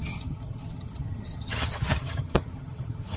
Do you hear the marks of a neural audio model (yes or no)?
yes